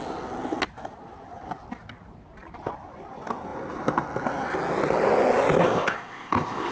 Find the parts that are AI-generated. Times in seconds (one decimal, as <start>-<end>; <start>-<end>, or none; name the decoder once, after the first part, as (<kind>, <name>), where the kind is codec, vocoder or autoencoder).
5.6-6.7 (codec, ZipCodec)